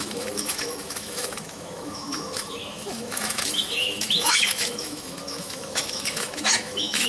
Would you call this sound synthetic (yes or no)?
yes